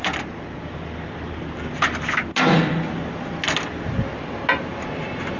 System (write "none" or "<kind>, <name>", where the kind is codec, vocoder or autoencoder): none